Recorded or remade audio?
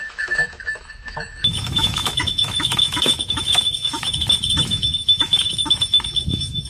remade